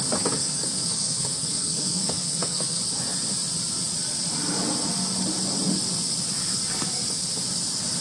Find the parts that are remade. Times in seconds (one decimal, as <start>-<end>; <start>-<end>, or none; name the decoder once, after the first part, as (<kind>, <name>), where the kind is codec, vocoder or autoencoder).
0.4-2.8 (codec, SNAC)